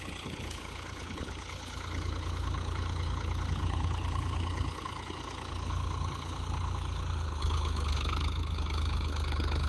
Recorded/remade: remade